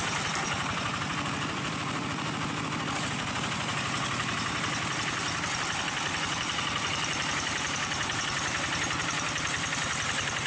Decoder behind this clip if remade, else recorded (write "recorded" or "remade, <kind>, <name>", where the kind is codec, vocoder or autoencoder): remade, vocoder, BigVGAN v2